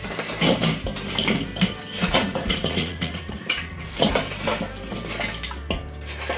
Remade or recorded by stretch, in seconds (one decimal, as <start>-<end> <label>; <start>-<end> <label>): 0.0-2.0 recorded; 2.0-4.1 remade; 4.1-6.4 recorded